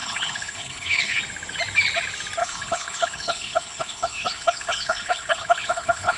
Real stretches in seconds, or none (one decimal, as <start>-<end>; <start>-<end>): 1.2-2.4